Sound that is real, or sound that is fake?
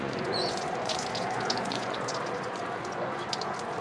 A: fake